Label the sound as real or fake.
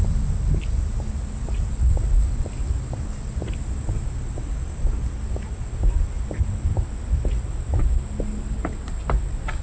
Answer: real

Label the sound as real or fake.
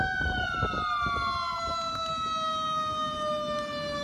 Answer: real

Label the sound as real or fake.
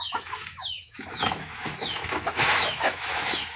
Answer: fake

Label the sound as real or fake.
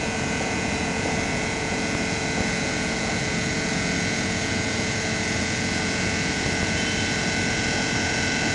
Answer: fake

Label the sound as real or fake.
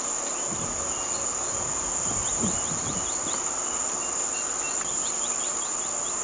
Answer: real